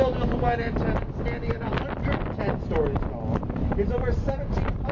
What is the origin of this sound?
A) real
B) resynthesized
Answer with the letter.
A